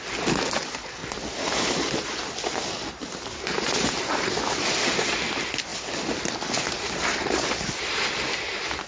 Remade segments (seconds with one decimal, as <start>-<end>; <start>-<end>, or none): none